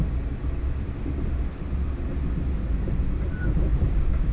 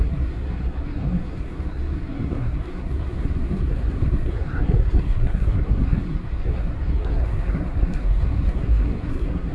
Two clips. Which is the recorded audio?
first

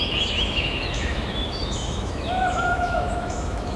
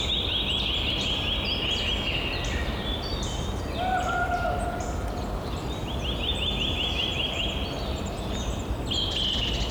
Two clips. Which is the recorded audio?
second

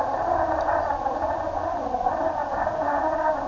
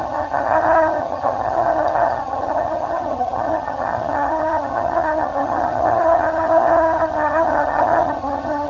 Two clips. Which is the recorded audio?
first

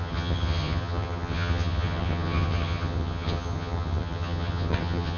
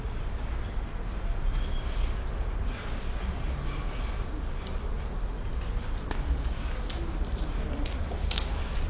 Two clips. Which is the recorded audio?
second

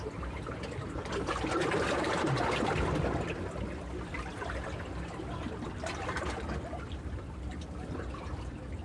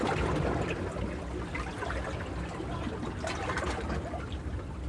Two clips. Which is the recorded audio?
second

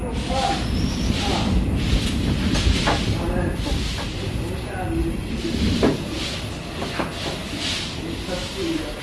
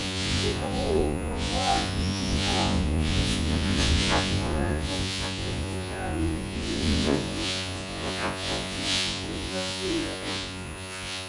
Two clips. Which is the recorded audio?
first